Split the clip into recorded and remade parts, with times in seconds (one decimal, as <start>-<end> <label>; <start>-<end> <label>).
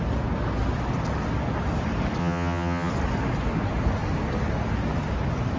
0.0-2.2 recorded; 2.2-2.9 remade; 2.9-5.6 recorded